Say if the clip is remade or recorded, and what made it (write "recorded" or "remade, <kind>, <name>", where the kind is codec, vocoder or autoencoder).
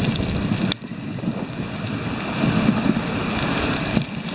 recorded